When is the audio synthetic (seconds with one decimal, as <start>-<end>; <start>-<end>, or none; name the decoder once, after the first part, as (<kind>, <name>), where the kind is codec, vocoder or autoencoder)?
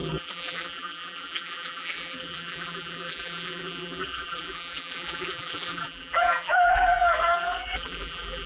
0.0-8.5 (vocoder, BigVGAN v2)